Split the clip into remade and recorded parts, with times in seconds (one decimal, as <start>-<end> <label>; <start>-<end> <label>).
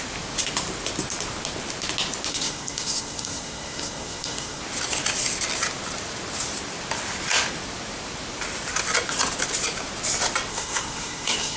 0.0-2.3 recorded; 2.3-4.6 remade; 4.6-10.5 recorded; 10.5-11.6 remade